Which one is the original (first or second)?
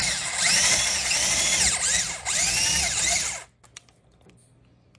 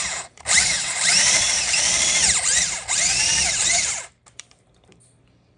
first